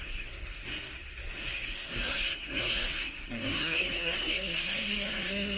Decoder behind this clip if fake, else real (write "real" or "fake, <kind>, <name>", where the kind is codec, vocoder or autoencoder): fake, codec, SNAC